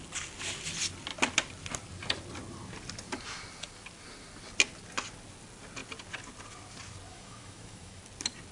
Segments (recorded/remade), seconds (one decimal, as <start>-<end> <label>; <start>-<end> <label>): 0.0-7.1 recorded; 7.1-8.0 remade; 8.0-8.5 recorded